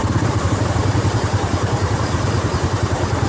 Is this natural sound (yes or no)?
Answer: no